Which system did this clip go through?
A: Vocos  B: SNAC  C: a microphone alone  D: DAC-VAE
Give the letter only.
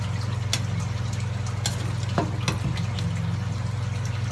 C